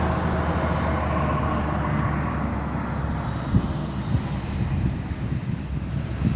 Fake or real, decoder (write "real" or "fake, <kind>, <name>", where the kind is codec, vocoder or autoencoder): real